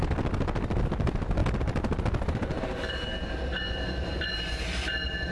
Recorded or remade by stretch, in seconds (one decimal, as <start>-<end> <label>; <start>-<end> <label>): 0.0-5.3 recorded